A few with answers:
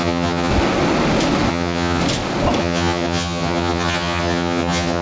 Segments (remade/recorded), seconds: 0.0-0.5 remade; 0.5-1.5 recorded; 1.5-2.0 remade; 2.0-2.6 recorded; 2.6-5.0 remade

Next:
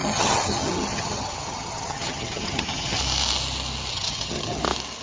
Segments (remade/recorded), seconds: 0.0-3.0 remade; 3.0-3.9 recorded; 3.9-4.6 remade; 4.6-5.0 recorded

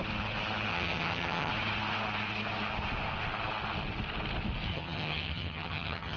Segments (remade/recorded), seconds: 0.0-0.7 recorded; 0.7-1.5 remade; 1.5-4.7 recorded; 4.7-6.2 remade

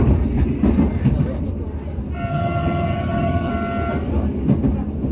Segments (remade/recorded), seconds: 0.0-2.3 recorded; 2.3-3.5 remade; 3.5-5.1 recorded